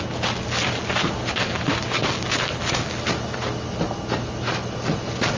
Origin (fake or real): real